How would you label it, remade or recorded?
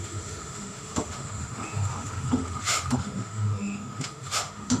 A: remade